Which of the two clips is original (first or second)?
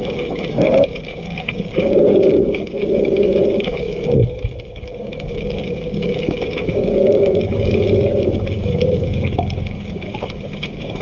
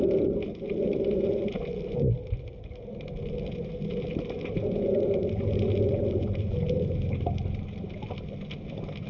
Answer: second